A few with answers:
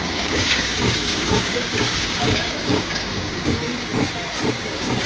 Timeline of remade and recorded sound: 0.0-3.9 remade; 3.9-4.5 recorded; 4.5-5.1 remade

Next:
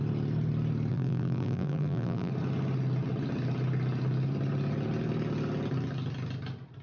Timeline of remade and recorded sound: 0.0-0.9 recorded; 0.9-2.3 remade; 2.3-6.8 recorded